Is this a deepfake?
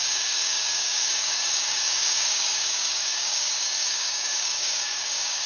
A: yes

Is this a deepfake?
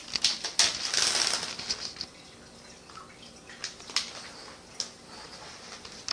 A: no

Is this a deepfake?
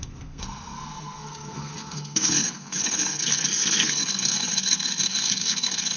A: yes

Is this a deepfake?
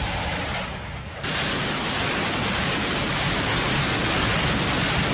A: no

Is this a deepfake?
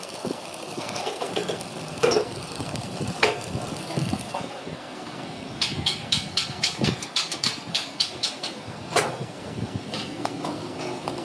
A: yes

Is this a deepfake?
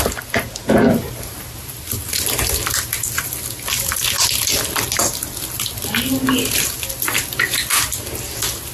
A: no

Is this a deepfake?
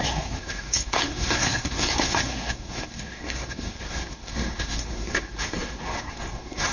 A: yes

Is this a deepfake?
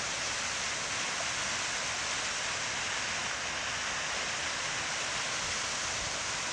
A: no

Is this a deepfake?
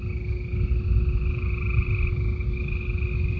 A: no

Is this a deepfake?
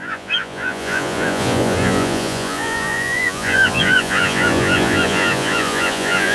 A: yes